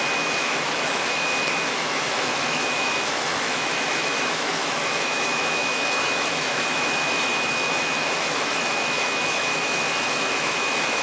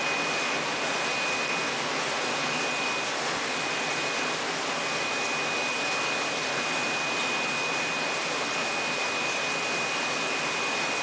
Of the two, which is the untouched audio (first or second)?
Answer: second